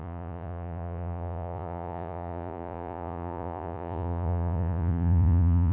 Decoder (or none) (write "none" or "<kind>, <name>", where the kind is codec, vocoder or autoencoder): vocoder, Vocos